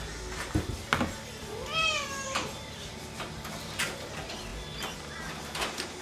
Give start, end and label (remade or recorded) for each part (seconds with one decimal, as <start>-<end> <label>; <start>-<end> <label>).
0.0-1.8 recorded; 1.8-3.8 remade; 3.8-4.5 recorded; 4.5-5.0 remade; 5.0-6.0 recorded